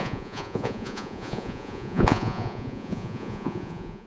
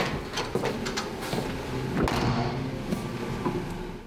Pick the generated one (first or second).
first